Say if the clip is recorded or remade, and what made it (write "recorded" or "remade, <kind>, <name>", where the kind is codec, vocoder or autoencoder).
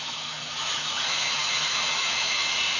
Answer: remade, autoencoder, DAC-VAE